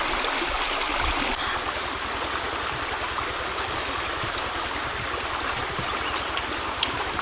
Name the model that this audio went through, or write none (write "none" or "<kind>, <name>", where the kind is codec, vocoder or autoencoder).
none